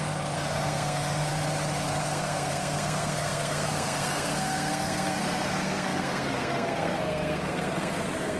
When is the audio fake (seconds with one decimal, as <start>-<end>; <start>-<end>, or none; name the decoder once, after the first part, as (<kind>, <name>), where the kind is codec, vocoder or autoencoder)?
0.0-1.3 (codec, SNAC); 2.0-8.4